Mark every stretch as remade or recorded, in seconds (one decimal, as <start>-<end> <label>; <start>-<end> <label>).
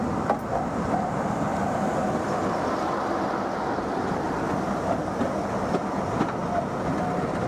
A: 0.0-2.4 recorded; 2.4-5.3 remade; 5.3-7.5 recorded